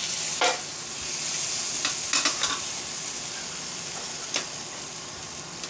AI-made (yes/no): no